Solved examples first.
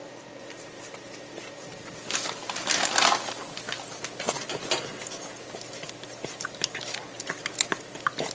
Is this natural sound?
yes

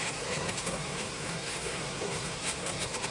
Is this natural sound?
no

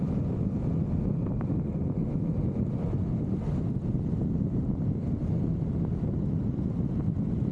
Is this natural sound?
yes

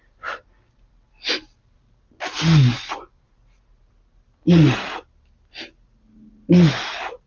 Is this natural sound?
yes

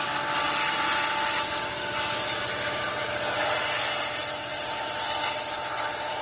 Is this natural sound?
yes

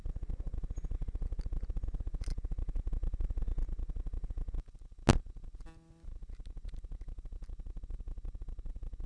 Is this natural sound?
yes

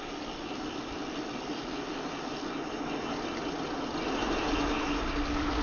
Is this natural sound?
no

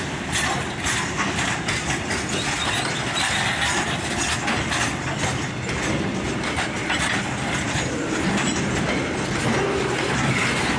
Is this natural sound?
yes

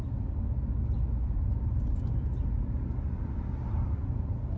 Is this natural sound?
yes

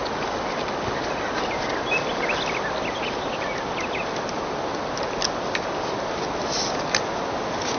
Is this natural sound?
yes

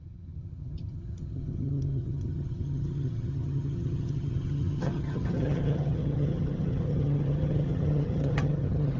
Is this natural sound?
no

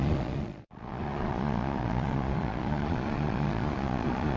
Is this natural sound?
no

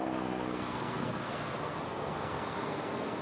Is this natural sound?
no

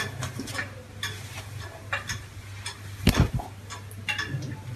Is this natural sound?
yes